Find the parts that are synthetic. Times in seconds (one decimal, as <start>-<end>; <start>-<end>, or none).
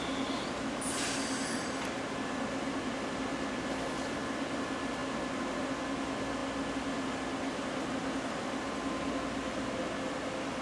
none